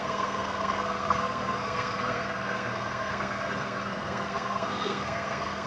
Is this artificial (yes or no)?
yes